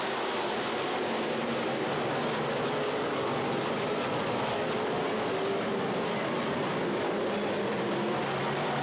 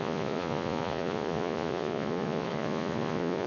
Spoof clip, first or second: second